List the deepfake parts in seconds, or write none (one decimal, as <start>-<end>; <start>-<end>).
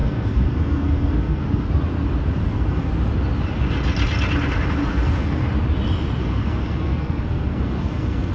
0.0-1.7; 2.4-2.9; 4.9-5.5; 6.2-8.3